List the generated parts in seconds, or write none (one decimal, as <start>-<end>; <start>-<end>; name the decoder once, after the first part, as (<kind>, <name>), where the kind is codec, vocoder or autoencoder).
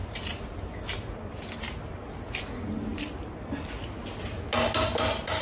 none